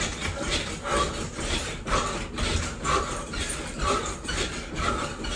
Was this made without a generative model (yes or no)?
yes